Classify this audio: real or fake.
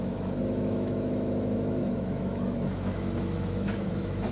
fake